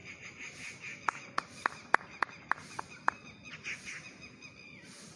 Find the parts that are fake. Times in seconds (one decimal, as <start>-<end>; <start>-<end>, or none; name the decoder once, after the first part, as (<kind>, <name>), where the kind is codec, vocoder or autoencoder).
none